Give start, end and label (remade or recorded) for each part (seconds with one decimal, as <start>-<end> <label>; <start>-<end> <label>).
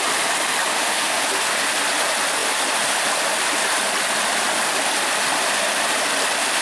0.0-0.7 recorded; 0.7-1.2 remade; 1.2-6.6 recorded